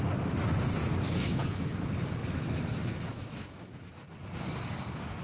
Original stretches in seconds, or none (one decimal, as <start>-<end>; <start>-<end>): 0.0-0.8; 3.9-5.2